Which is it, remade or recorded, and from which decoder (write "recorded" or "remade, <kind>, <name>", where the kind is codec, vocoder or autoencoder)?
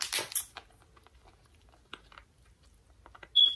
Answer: recorded